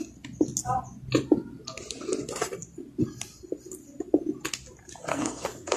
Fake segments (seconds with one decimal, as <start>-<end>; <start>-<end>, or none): 5.1-5.8

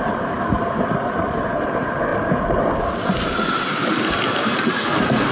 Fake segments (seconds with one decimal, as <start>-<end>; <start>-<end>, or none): none